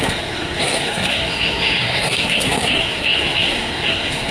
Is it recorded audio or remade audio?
remade